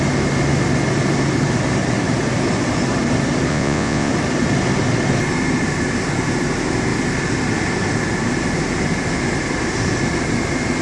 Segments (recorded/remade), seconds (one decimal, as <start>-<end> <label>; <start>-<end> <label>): 0.0-3.5 recorded; 3.5-4.1 remade; 4.1-10.8 recorded